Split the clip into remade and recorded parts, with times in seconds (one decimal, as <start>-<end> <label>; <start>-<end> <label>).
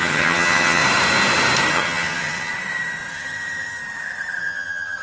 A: 0.0-0.8 remade; 0.8-1.7 recorded; 1.7-2.5 remade; 2.5-3.1 recorded; 3.1-3.8 remade; 3.8-4.4 recorded; 4.4-5.0 remade